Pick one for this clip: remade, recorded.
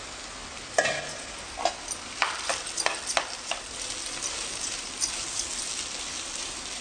recorded